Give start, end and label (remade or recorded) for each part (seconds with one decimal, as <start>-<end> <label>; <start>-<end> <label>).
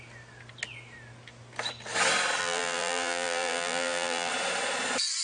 0.0-2.4 recorded; 2.4-4.3 remade; 4.3-5.2 recorded